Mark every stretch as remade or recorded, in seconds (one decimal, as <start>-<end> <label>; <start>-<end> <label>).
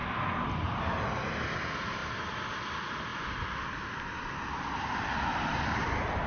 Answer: 0.0-6.3 recorded